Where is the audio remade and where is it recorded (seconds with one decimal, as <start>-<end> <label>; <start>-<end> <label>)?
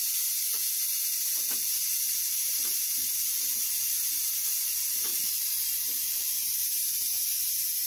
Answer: 0.0-4.1 remade; 4.1-5.1 recorded; 5.1-7.9 remade